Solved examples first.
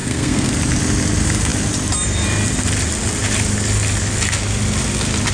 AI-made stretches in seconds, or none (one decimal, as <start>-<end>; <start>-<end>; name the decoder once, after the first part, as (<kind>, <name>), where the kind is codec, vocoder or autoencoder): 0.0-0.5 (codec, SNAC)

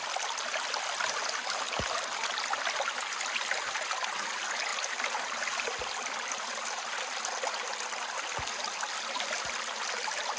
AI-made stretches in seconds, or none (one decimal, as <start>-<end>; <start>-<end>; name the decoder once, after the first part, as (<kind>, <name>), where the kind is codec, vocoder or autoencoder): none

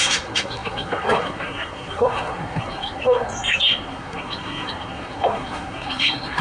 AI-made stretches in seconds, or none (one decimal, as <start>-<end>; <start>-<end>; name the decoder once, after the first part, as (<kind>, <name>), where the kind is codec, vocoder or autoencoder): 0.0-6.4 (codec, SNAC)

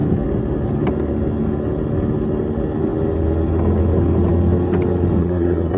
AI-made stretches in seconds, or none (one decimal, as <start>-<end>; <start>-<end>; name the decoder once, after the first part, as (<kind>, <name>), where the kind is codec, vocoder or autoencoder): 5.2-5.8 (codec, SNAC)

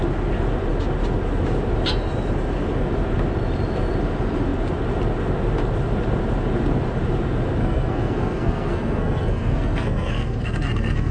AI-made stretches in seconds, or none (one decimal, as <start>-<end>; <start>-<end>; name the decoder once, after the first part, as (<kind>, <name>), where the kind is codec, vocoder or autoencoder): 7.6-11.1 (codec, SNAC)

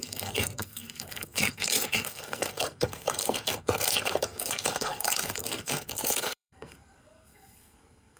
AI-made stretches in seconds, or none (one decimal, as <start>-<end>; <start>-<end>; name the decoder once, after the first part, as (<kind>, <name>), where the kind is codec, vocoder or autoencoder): 0.0-8.2 (codec, SNAC)

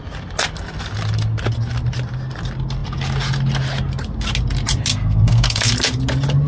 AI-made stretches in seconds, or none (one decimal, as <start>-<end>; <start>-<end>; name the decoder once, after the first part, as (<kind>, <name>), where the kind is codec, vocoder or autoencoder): 4.9-5.7 (codec, SNAC)

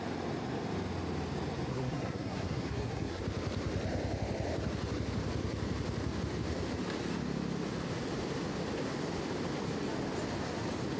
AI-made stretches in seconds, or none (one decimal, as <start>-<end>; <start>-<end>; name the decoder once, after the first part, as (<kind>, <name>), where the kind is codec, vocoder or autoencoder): 1.7-3.2 (codec, SNAC)